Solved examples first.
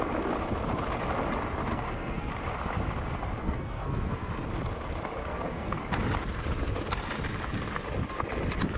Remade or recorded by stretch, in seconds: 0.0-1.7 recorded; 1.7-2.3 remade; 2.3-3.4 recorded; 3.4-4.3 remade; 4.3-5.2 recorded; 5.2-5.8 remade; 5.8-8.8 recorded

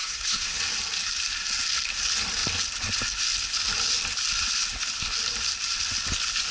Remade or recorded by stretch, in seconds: 0.0-0.6 remade; 0.6-6.5 recorded

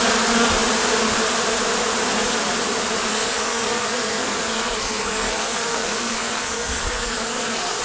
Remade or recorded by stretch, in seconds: 0.0-3.1 recorded; 3.1-7.8 remade

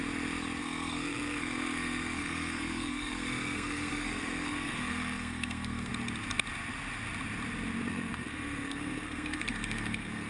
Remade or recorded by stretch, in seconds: 0.0-0.6 recorded; 0.6-5.9 remade; 5.9-7.9 recorded; 7.9-10.3 remade

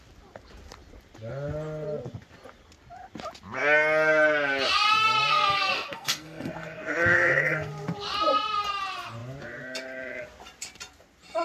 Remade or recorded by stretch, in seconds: 0.0-5.3 recorded; 5.3-7.7 remade; 7.7-11.4 recorded

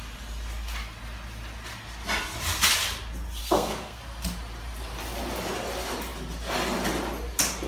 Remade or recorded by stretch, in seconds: 0.0-3.4 recorded; 3.4-4.0 remade; 4.0-7.7 recorded